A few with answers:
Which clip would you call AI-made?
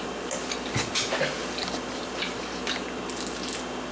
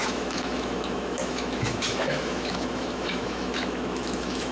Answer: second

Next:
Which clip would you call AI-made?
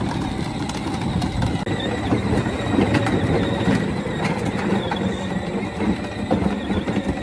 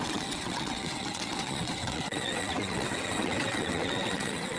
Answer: second